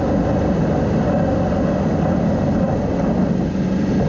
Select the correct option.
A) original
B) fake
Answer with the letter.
A